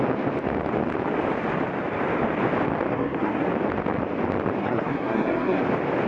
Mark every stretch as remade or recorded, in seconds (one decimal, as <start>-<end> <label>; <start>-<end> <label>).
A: 0.0-2.9 recorded; 2.9-3.5 remade; 3.5-4.6 recorded; 4.6-5.6 remade; 5.6-6.1 recorded